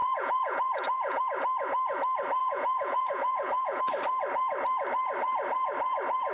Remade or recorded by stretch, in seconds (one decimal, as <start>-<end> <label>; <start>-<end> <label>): 0.0-1.2 remade; 1.2-2.4 recorded; 2.4-3.8 remade; 3.8-6.3 recorded